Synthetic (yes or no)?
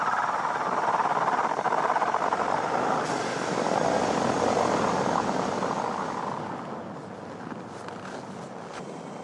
no